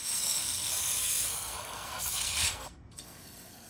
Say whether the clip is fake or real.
fake